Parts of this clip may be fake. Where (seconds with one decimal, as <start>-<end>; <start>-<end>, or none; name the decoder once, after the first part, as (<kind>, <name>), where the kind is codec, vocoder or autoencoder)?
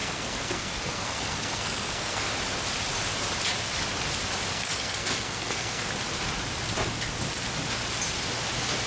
0.0-2.3 (codec, SNAC); 4.5-5.9